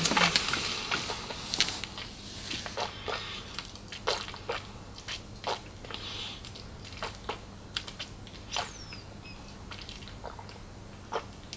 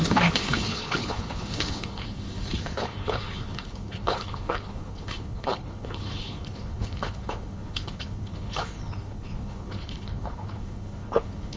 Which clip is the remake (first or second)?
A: second